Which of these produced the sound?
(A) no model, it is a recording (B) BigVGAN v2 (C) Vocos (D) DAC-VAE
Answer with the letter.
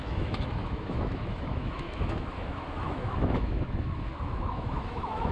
D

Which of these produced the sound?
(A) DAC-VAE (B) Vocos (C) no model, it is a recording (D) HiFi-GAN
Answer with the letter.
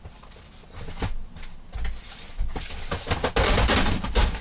C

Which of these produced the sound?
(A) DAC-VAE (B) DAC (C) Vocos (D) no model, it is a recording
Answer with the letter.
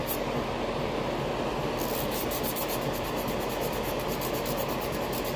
D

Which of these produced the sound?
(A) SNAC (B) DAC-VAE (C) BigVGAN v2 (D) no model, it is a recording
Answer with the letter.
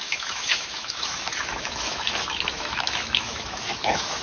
B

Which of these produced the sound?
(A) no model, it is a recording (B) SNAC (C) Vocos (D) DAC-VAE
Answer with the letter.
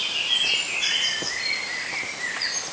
A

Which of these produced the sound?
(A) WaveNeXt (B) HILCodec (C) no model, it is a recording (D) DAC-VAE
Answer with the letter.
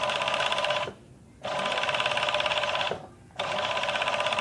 C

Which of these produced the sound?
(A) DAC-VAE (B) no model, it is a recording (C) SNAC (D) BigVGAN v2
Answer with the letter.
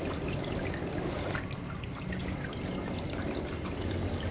B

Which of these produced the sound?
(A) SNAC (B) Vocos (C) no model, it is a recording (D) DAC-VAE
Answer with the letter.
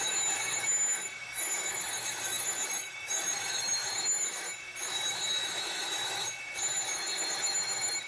D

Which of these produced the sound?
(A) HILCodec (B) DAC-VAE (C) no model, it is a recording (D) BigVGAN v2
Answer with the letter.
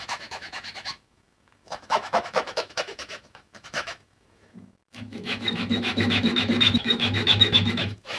B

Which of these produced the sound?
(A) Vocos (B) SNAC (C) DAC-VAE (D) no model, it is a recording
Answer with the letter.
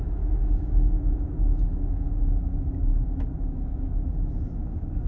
C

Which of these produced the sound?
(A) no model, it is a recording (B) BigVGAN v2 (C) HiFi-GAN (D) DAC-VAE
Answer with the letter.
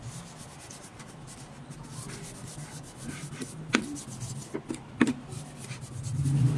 A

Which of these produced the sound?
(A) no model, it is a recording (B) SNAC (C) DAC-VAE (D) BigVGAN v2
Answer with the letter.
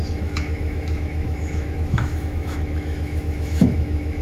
C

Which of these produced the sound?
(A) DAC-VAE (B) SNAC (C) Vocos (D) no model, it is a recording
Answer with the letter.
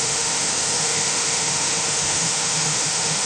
A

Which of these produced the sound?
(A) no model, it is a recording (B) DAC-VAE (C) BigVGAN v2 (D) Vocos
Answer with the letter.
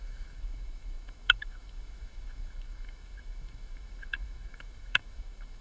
B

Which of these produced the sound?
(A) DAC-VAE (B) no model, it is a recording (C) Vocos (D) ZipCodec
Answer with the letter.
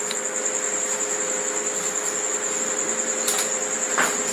B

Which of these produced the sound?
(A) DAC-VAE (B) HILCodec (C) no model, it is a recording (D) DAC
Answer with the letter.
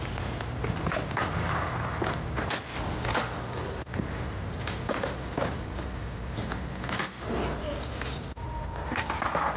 C